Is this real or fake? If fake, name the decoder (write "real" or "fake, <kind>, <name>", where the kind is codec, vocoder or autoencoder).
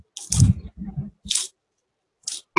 real